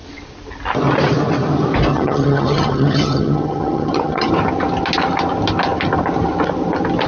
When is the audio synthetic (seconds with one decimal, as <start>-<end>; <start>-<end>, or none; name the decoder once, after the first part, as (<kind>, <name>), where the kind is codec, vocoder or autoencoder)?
1.9-4.3 (vocoder, HiFi-GAN)